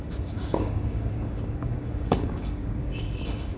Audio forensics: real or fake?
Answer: fake